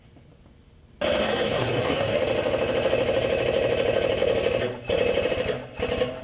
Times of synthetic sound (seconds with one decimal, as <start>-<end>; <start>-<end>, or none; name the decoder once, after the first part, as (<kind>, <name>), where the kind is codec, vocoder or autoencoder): 1.2-2.2 (codec, SNAC)